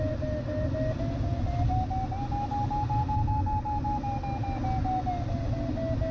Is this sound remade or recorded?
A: recorded